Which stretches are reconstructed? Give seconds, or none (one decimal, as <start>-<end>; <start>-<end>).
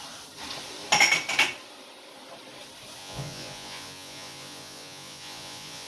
3.0-5.9